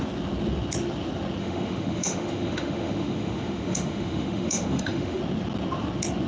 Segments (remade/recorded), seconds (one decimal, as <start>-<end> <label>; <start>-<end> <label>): 0.0-1.4 recorded; 1.4-5.2 remade; 5.2-6.3 recorded